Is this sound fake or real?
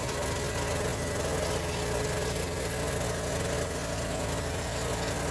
real